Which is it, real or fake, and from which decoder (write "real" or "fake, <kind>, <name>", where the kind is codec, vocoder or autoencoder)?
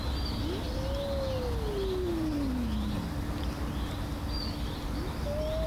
real